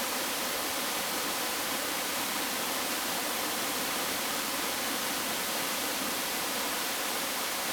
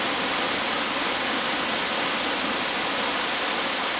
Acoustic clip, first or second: second